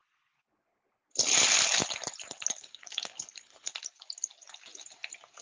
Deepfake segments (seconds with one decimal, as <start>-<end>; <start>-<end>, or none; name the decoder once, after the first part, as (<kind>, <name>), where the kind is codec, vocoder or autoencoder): 2.6-3.7 (codec, HILCodec)